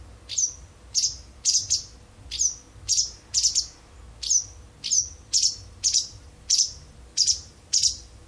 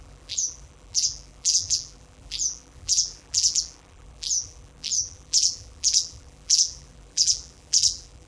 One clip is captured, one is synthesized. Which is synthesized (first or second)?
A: second